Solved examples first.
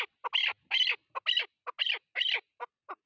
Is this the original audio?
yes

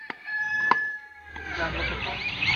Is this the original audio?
yes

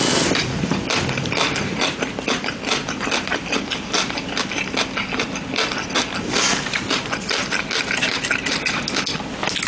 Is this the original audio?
yes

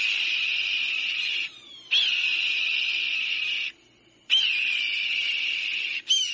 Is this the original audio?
no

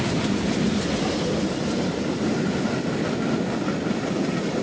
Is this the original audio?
yes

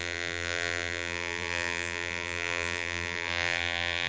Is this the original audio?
no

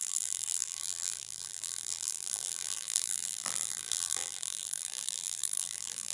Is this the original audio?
no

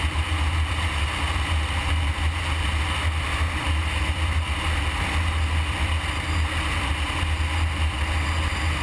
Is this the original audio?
yes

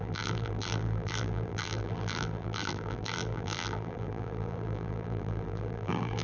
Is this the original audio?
no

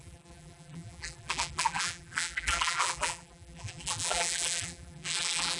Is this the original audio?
no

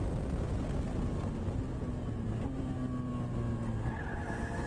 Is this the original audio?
yes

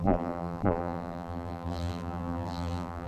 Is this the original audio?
no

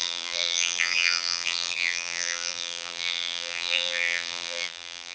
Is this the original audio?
no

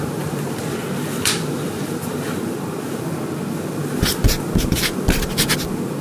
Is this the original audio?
yes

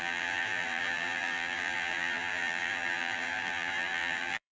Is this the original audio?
no